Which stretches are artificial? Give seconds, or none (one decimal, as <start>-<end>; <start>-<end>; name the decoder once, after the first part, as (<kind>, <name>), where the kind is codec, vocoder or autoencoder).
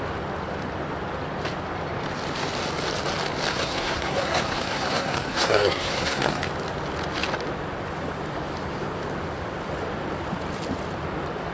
3.5-6.4 (codec, SNAC)